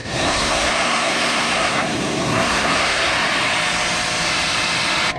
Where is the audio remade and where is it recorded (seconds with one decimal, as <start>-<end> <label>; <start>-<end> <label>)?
0.0-3.1 remade; 3.1-5.2 recorded